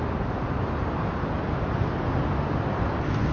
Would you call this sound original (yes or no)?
yes